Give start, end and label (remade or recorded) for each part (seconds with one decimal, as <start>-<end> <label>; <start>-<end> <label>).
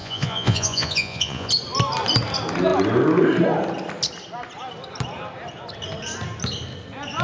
0.0-1.5 remade; 1.5-7.2 recorded